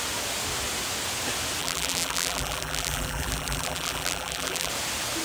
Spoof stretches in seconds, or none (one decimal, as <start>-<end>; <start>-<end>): 1.6-4.7